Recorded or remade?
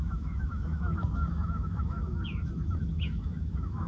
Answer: remade